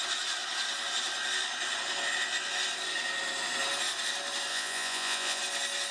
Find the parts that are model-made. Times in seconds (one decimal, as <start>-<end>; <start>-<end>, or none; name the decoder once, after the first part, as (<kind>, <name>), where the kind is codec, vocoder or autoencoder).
4.5-5.4 (vocoder, Vocos)